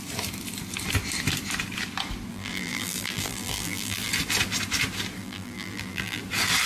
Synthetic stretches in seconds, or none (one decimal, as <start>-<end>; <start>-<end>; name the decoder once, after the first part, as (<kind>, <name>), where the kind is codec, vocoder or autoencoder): 2.3-4.1 (vocoder, BigVGAN v2); 5.2-6.2